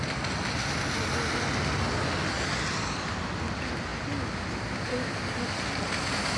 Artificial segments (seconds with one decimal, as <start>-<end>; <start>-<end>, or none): none